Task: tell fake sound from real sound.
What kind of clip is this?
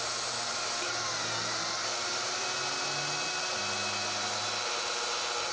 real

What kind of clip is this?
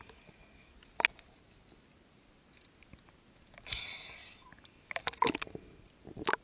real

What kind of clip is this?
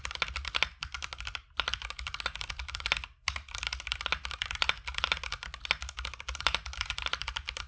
real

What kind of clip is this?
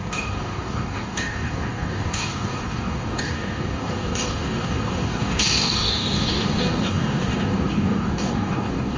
fake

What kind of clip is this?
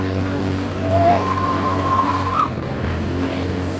fake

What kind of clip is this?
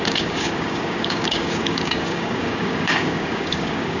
fake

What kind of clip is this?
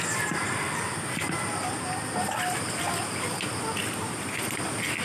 real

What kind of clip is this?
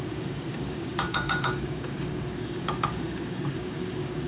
fake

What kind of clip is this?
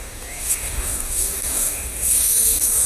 fake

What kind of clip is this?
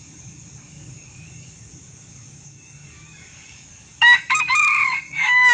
fake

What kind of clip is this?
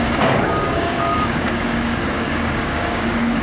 fake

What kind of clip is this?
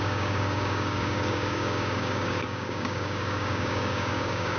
fake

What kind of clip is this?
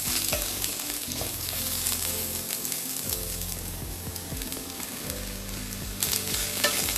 fake